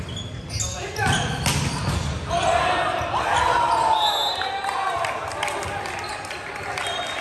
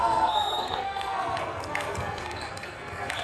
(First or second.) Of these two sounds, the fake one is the second